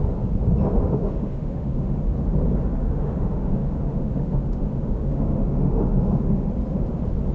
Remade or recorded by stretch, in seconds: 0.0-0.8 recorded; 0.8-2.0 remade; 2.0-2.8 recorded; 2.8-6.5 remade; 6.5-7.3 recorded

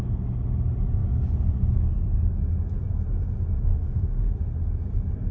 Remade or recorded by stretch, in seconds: 0.0-3.7 recorded; 3.7-4.4 remade; 4.4-5.3 recorded

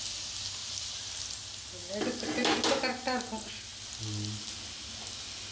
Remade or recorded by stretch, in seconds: 0.0-0.6 recorded; 0.6-1.2 remade; 1.2-5.5 recorded